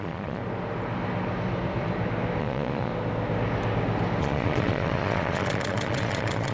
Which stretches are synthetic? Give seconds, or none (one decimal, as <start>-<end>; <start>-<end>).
0.0-0.4; 2.4-2.9; 4.2-6.5